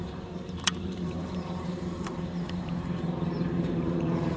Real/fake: fake